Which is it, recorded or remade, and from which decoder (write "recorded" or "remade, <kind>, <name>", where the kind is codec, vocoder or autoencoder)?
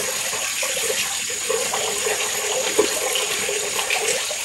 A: recorded